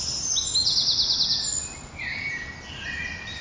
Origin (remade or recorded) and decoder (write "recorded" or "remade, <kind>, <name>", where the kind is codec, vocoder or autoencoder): recorded